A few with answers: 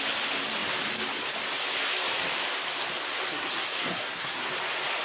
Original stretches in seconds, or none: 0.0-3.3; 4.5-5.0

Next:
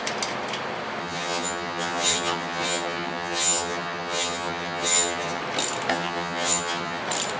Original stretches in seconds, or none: 0.0-1.0; 5.4-5.9; 7.0-7.4

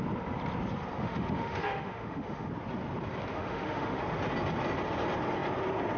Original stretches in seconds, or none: 0.0-1.0; 2.5-3.3; 4.0-6.0